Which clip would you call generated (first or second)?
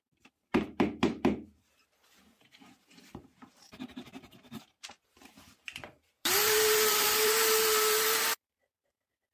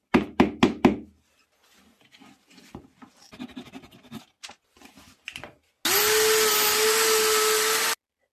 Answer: first